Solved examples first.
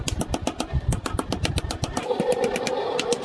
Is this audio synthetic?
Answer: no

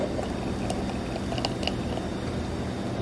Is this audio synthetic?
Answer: no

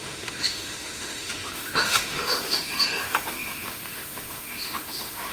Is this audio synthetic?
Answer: yes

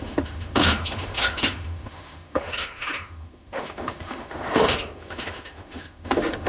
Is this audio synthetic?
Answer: yes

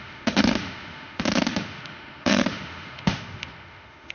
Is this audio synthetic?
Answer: yes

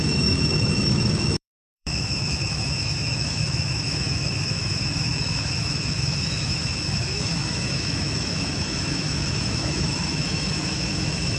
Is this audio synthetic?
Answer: yes